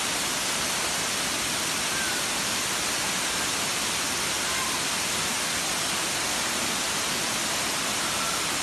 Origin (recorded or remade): recorded